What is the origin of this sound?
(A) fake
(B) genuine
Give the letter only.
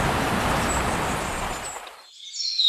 B